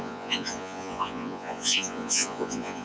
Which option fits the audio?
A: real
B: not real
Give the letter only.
B